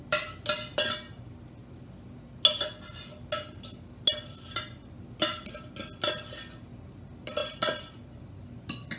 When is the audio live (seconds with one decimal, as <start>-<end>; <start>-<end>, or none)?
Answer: 0.0-7.4